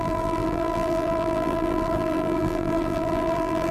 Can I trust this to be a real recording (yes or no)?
no